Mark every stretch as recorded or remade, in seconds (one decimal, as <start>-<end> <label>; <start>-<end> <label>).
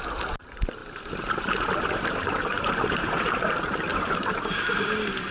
0.0-0.8 recorded; 0.8-3.3 remade; 3.3-3.9 recorded; 3.9-4.6 remade; 4.6-5.3 recorded